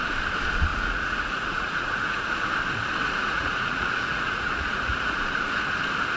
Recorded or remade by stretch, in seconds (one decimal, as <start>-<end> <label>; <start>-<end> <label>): 0.0-0.7 recorded; 0.7-2.5 remade; 2.5-3.0 recorded; 3.0-5.5 remade; 5.5-6.2 recorded